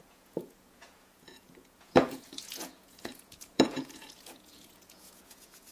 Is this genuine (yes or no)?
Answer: no